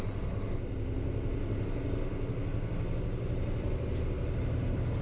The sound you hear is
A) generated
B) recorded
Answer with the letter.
B